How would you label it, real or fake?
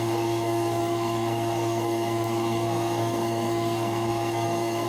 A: fake